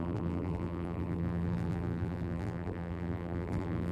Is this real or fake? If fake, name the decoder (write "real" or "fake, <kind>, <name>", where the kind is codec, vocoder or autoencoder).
fake, vocoder, BigVGAN v2